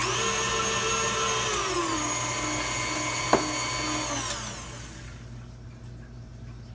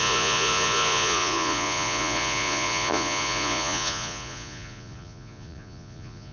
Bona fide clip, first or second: first